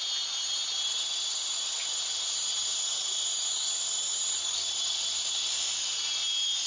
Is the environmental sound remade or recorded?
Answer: recorded